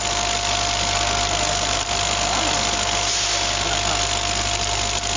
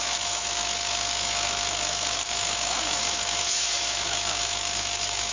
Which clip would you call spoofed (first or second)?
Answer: second